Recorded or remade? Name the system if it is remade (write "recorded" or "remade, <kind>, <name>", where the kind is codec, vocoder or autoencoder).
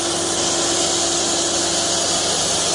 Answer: recorded